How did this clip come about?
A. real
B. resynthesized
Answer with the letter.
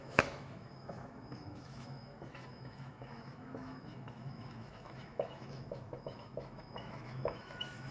B